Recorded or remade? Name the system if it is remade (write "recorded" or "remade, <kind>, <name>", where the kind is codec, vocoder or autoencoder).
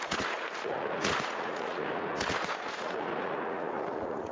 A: remade, vocoder, Vocos